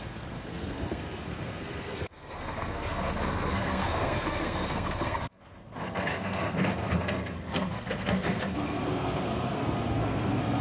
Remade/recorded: remade